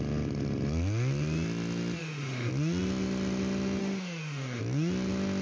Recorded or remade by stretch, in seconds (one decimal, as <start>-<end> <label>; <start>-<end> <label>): 0.0-2.0 recorded; 2.0-2.5 remade; 2.5-3.8 recorded; 3.8-4.6 remade; 4.6-5.4 recorded